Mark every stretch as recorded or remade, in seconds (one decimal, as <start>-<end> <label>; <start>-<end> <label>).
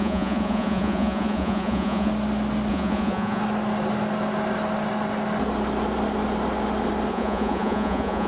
0.0-2.1 remade; 2.1-2.7 recorded; 2.7-3.4 remade; 3.4-7.1 recorded; 7.1-8.3 remade